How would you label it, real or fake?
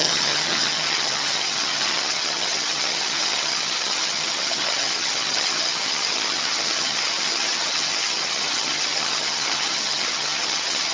fake